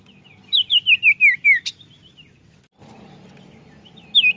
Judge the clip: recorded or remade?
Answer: recorded